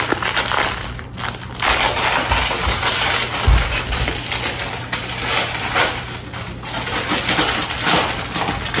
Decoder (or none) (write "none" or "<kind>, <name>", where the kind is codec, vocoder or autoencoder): none